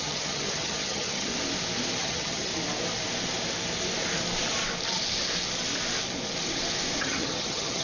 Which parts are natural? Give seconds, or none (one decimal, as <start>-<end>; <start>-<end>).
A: 1.3-2.0; 2.5-7.0